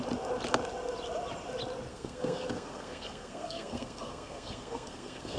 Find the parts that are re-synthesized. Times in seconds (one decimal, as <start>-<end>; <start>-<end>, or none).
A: 1.9-5.4